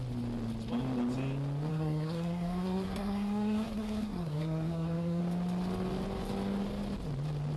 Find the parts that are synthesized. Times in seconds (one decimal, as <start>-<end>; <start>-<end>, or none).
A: 1.7-5.2